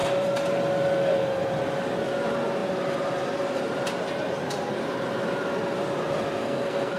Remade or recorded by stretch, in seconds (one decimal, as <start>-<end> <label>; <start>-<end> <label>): 0.0-6.4 recorded; 6.4-7.0 remade